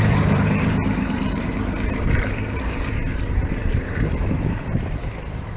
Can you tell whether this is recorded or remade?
remade